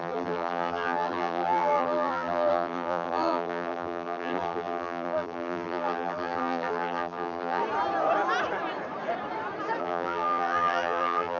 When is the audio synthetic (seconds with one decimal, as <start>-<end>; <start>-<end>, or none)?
0.0-7.6; 9.8-11.4